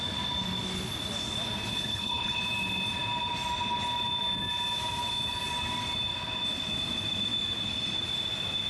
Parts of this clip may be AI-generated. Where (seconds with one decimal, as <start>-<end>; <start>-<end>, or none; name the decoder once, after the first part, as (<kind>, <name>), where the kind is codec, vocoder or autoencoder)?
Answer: 1.7-2.4 (codec, HILCodec)